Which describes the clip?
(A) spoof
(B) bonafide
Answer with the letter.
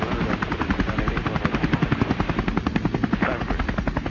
B